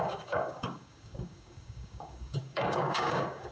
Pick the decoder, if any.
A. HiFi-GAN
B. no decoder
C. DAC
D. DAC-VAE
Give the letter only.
C